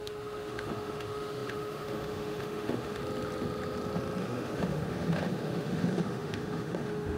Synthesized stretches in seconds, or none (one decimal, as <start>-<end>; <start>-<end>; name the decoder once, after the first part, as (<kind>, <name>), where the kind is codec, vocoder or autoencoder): 0.0-3.0 (autoencoder, DAC-VAE); 4.2-7.2